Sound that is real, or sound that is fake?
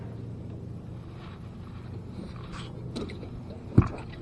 real